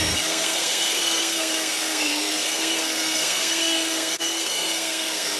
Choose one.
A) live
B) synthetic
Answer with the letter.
B